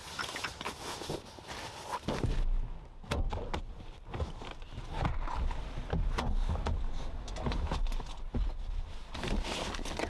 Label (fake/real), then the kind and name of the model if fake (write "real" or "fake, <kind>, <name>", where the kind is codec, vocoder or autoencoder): real